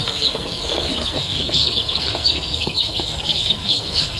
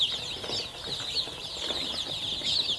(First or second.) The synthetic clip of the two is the first